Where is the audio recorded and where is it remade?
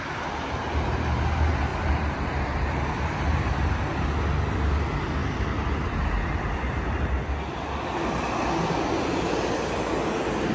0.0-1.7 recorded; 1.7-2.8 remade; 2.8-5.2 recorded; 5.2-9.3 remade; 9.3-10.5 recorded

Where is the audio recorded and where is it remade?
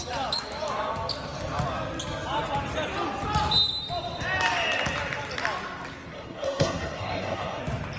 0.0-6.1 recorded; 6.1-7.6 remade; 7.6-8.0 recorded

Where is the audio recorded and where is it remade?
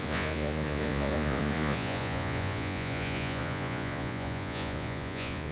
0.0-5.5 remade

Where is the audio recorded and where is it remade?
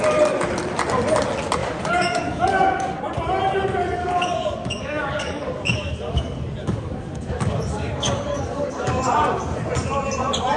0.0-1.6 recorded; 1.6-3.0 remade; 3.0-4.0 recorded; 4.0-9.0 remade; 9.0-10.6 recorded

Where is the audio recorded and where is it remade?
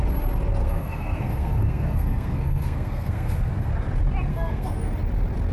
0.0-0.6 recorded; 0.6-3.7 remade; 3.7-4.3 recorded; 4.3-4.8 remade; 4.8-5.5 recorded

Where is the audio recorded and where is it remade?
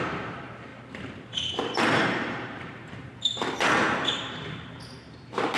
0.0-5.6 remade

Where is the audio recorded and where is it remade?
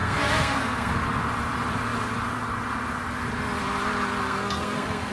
0.0-0.9 remade; 0.9-4.2 recorded; 4.2-5.1 remade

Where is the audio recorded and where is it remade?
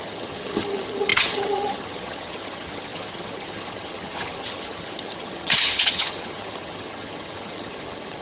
0.0-8.2 remade